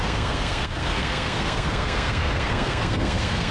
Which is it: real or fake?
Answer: fake